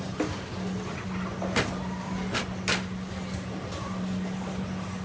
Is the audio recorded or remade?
recorded